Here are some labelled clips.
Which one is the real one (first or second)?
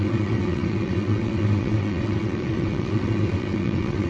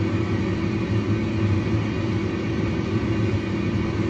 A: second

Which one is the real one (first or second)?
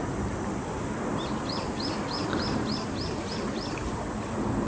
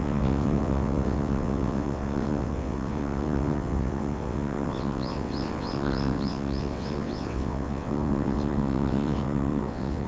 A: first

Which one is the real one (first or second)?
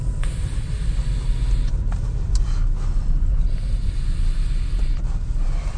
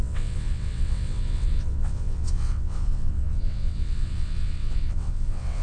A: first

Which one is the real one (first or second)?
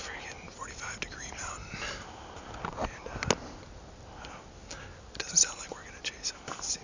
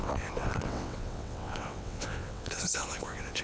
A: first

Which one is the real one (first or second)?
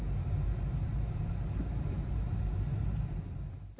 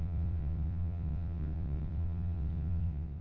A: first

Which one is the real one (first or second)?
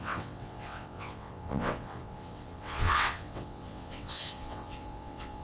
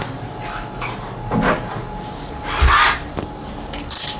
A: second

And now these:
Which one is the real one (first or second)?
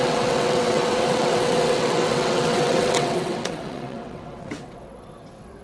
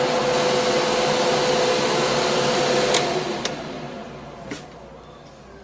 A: second